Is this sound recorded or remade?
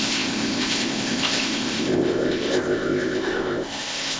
remade